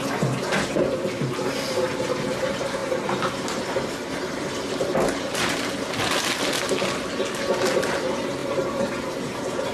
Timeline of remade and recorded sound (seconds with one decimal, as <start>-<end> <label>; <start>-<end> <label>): 0.0-2.8 recorded; 2.8-4.5 remade; 4.5-4.9 recorded; 4.9-5.9 remade; 5.9-8.4 recorded; 8.4-9.7 remade